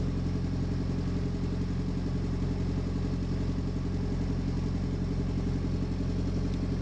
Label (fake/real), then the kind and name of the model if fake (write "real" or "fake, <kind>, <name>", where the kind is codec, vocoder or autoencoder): real